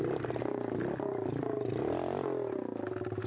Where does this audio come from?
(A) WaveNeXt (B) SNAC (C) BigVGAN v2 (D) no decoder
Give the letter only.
D